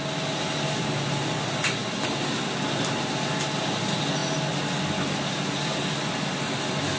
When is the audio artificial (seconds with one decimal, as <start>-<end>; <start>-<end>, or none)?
none